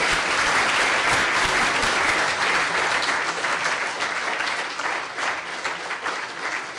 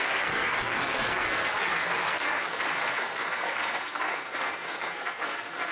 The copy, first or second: second